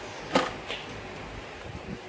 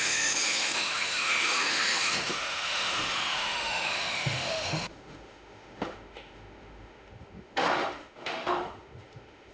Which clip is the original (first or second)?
first